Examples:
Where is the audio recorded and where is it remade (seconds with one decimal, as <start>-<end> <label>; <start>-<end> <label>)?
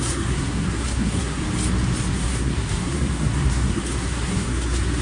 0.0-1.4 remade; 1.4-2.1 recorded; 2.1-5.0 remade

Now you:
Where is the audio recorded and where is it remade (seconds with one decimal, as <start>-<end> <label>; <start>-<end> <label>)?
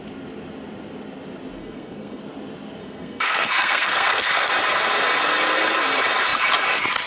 0.0-1.6 recorded; 1.6-2.2 remade; 2.2-2.8 recorded; 2.8-4.5 remade; 4.5-7.1 recorded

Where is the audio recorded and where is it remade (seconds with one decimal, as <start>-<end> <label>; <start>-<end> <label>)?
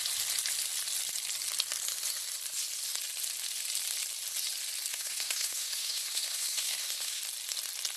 0.0-4.9 recorded; 4.9-7.2 remade; 7.2-8.0 recorded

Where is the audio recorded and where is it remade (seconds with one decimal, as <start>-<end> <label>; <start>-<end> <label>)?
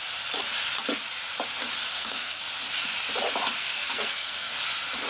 0.0-1.9 recorded; 1.9-2.4 remade; 2.4-3.6 recorded; 3.6-4.5 remade; 4.5-5.1 recorded